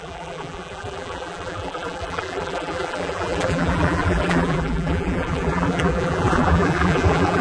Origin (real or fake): fake